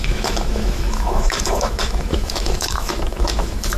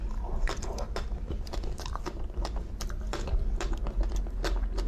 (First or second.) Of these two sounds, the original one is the second